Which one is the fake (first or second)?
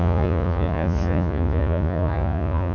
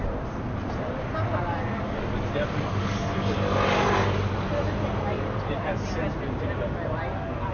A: first